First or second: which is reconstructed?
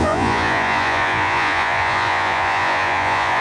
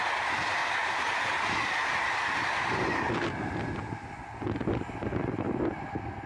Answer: first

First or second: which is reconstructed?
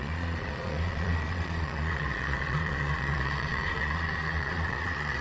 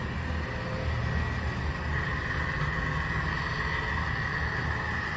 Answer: first